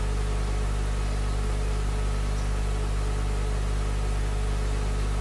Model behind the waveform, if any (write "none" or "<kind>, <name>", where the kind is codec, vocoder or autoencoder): none